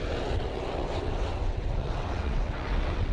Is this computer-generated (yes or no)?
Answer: yes